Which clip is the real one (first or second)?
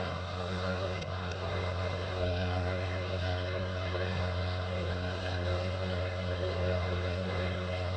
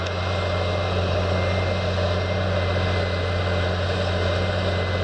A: second